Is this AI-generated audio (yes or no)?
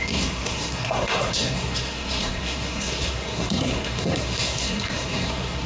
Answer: yes